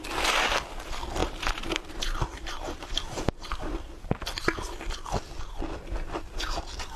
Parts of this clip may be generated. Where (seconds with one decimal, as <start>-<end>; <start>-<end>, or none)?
1.2-3.6